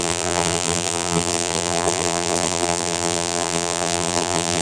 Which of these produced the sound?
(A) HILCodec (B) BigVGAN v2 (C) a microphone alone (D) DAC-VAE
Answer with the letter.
B